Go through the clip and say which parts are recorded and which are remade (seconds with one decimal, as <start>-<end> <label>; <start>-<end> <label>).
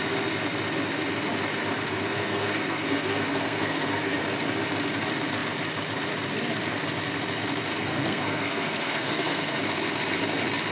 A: 0.0-1.8 recorded; 1.8-4.2 remade; 4.2-7.7 recorded; 7.7-9.6 remade; 9.6-10.7 recorded